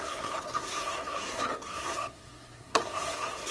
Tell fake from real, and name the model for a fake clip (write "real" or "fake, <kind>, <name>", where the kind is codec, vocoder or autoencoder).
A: fake, codec, SNAC